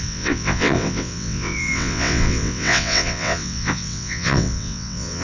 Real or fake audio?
fake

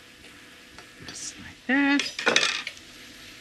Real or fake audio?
real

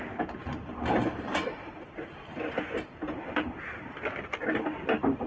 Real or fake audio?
real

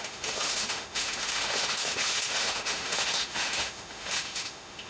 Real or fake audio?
fake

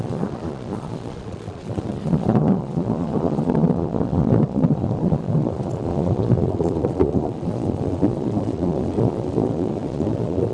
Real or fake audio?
fake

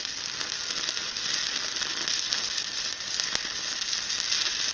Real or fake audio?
real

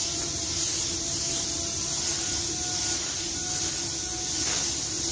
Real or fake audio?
real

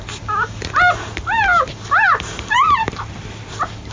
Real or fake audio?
real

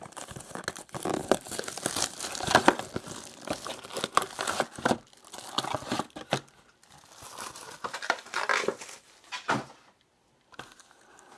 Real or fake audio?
real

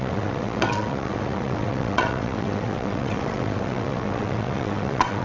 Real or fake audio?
fake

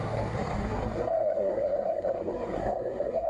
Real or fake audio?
fake